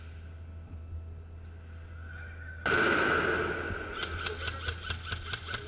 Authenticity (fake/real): real